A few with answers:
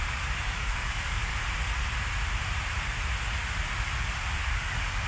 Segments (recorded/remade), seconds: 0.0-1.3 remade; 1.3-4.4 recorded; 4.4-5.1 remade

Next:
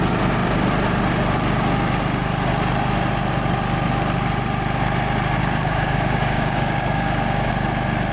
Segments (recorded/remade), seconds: 0.0-5.4 recorded; 5.4-7.5 remade; 7.5-8.1 recorded

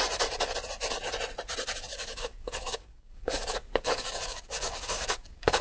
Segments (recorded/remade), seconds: 0.0-1.9 recorded; 1.9-5.6 remade

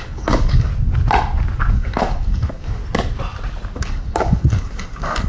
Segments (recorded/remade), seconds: 0.0-0.7 remade; 0.7-1.7 recorded; 1.7-2.8 remade; 2.8-3.8 recorded; 3.8-5.3 remade

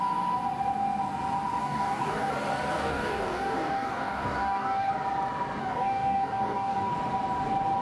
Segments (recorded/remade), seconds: 0.0-1.6 recorded; 1.6-2.3 remade; 2.3-2.7 recorded; 2.7-4.9 remade; 4.9-5.6 recorded; 5.6-6.9 remade; 6.9-7.8 recorded

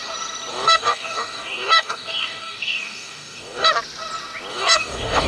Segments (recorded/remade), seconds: 0.0-0.5 recorded; 0.5-3.7 remade; 3.7-4.5 recorded; 4.5-5.3 remade

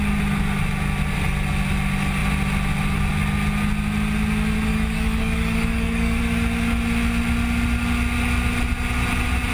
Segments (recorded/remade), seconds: 0.0-4.7 recorded; 4.7-6.2 remade; 6.2-9.5 recorded

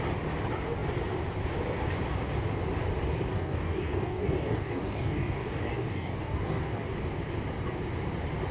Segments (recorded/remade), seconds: 0.0-3.3 recorded; 3.3-6.9 remade; 6.9-8.5 recorded